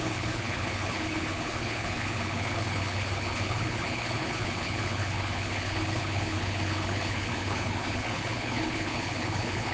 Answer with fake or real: fake